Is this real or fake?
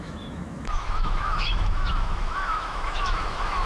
fake